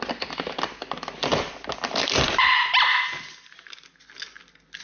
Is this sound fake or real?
real